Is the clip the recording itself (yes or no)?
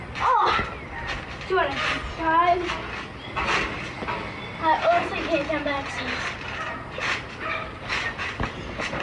yes